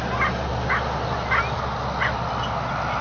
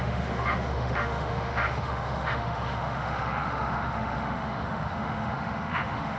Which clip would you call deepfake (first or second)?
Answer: second